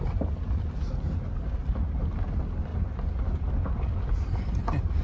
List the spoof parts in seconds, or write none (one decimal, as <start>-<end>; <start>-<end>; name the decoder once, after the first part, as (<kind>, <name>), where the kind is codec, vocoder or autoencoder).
none